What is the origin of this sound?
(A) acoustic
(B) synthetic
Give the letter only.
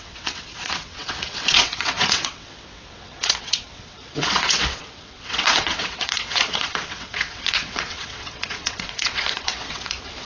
B